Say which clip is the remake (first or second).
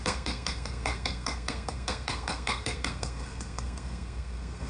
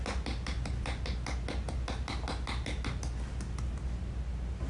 first